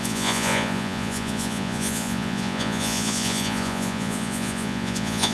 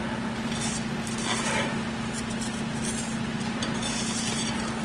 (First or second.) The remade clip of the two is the first